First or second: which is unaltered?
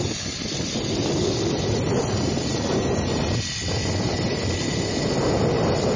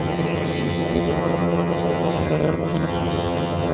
first